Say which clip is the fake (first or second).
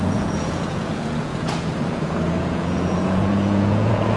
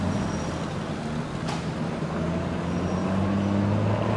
first